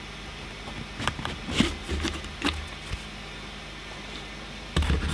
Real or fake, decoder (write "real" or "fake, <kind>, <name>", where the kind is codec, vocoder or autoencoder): real